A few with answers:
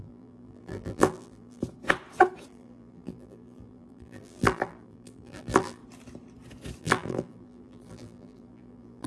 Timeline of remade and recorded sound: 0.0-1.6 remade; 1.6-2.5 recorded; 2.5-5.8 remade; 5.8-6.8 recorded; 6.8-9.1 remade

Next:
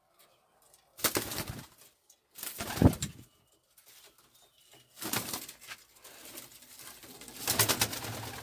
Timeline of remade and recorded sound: 0.0-8.4 recorded

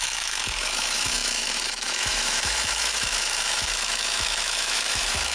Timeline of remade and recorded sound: 0.0-5.3 remade

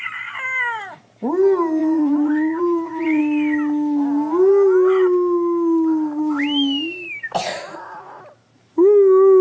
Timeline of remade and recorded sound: 0.0-1.8 recorded; 1.8-3.2 remade; 3.2-7.6 recorded; 7.6-8.2 remade; 8.2-9.4 recorded

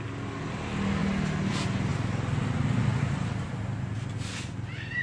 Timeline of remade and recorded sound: 0.0-5.0 recorded

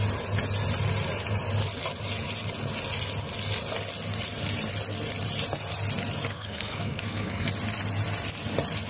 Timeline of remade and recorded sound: 0.0-6.3 recorded; 6.3-7.5 remade; 7.5-8.9 recorded